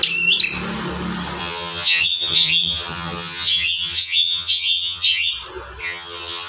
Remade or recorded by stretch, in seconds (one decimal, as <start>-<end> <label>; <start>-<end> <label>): 0.0-1.4 recorded; 1.4-5.3 remade; 5.3-5.8 recorded; 5.8-6.5 remade